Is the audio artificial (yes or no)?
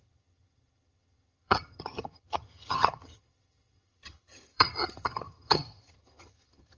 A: yes